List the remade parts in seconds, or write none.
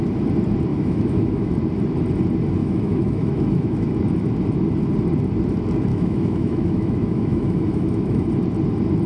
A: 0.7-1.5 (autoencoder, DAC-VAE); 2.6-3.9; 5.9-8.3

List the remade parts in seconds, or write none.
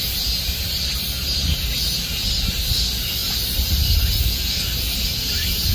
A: none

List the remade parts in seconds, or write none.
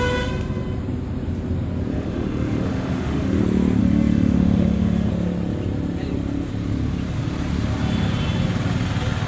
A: 1.9-3.4 (autoencoder, DAC-VAE); 3.8-5.1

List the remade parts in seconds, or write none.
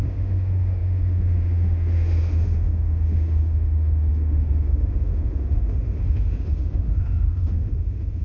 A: 0.0-8.2 (autoencoder, DAC-VAE)